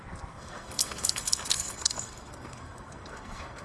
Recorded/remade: remade